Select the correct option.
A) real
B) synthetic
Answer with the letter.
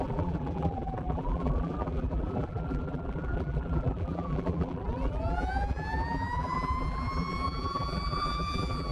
B